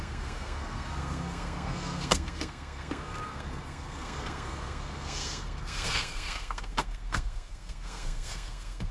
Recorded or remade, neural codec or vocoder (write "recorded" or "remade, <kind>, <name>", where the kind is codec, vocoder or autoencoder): remade, codec, SNAC